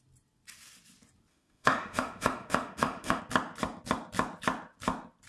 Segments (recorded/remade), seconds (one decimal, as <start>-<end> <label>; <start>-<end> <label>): 0.0-1.3 recorded; 1.3-3.2 remade; 3.2-5.3 recorded